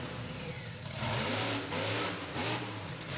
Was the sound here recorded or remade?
remade